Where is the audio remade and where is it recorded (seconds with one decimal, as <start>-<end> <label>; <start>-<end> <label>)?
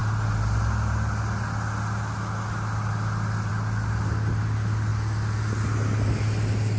0.0-6.8 recorded